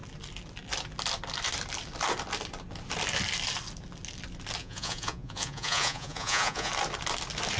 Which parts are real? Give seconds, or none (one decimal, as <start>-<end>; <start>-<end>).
0.0-4.6; 6.7-7.6